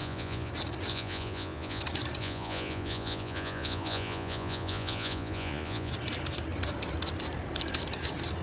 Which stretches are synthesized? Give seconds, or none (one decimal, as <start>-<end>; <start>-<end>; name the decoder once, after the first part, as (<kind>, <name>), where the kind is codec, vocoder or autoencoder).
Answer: 0.0-0.5 (vocoder, Vocos); 0.9-1.8; 2.2-5.9